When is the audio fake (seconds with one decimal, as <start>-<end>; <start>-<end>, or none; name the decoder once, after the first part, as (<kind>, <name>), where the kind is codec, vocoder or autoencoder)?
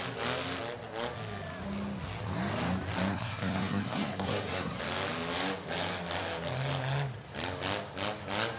3.1-4.8 (codec, SNAC)